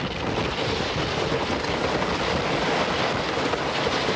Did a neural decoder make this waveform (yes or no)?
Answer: no